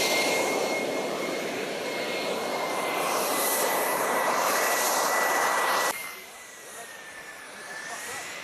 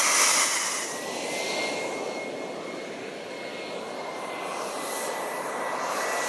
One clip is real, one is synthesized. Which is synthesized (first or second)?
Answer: first